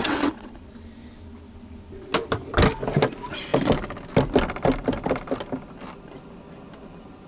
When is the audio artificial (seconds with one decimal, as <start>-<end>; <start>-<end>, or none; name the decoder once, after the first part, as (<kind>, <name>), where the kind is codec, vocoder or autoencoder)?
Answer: 0.0-0.7 (vocoder, WaveNeXt)